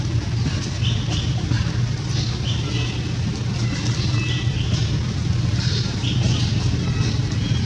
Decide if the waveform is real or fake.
real